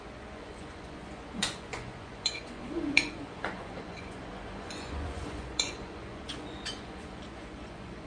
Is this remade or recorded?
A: remade